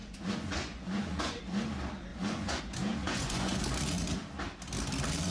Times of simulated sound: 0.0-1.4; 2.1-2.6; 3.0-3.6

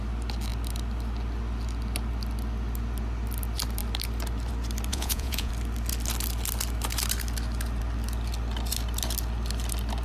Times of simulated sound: 4.9-5.5

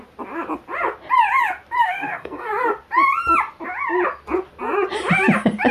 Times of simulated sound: 1.8-2.5

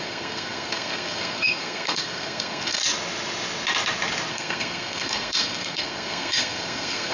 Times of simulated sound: 0.0-2.8; 4.3-7.1

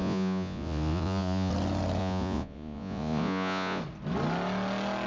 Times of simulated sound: 0.0-1.5; 2.0-3.8